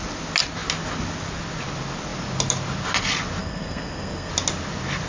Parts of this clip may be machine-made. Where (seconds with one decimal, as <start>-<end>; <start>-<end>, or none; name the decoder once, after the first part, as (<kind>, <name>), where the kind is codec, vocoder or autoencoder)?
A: 3.4-4.3 (codec, SNAC)

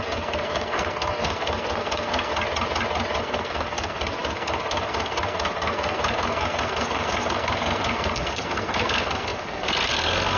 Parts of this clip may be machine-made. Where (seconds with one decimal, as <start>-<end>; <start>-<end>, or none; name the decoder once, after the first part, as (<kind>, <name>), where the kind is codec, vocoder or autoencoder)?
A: 0.0-2.3 (codec, SNAC); 3.2-10.4

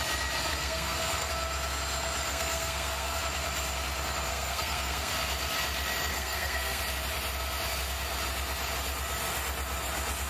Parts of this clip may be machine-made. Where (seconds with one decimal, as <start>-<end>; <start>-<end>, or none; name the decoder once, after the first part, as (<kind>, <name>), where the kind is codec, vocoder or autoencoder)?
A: 0.5-1.3 (codec, SNAC); 2.3-3.2; 4.3-5.1; 6.1-6.8

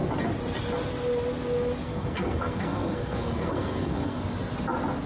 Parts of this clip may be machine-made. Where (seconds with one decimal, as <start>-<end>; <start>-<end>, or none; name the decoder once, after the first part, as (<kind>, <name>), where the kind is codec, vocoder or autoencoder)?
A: 1.8-4.2 (codec, SNAC)